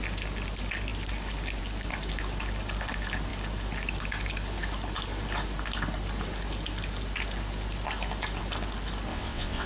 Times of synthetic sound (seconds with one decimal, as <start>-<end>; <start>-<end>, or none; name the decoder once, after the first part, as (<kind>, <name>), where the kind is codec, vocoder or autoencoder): 9.1-9.7 (vocoder, WaveNeXt)